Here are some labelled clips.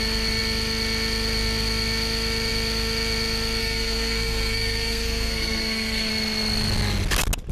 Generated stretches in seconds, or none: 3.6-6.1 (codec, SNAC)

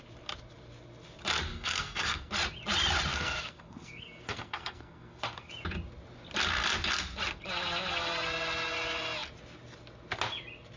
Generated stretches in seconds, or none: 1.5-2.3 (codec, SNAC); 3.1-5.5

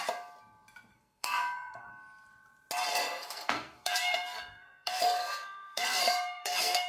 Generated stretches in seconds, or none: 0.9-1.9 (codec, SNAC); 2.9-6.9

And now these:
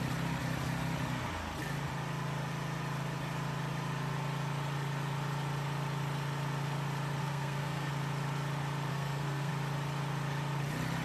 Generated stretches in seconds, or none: 7.2-7.9 (codec, SNAC); 8.9-9.5

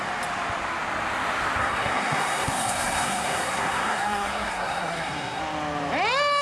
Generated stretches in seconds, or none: 1.6-5.4 (codec, SNAC)